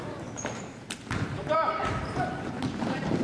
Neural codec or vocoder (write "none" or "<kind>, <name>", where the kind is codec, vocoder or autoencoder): vocoder, BigVGAN v2